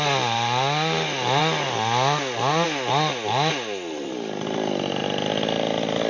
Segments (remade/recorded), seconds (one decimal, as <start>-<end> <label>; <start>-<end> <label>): 0.0-6.1 recorded